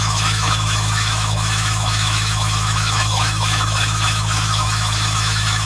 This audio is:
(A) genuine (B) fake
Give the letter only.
B